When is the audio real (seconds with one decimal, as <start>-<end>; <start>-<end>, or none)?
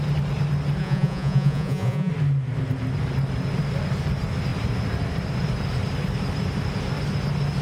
0.0-0.8; 2.1-7.6